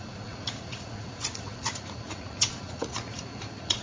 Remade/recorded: remade